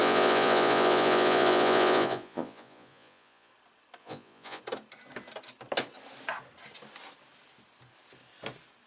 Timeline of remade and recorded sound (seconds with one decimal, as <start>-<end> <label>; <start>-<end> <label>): 0.0-3.5 remade; 3.5-4.0 recorded; 4.0-4.6 remade; 4.6-8.9 recorded